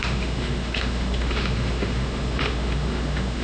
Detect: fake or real fake